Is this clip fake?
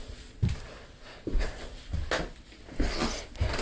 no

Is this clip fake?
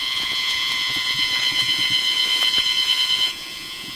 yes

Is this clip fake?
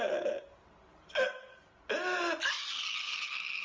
no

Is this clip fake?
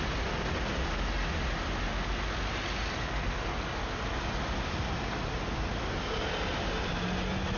no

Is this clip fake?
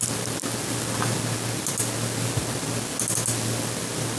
no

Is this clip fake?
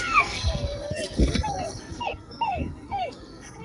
yes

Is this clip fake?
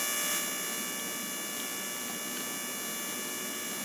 no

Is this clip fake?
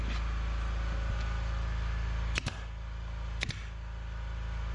no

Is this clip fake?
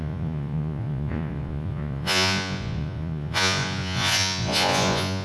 yes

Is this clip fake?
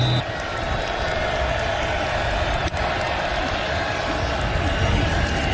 no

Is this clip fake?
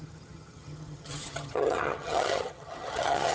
yes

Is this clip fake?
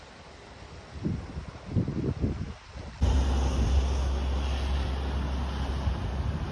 no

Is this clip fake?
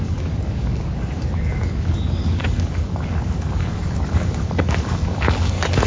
yes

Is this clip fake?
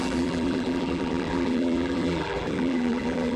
yes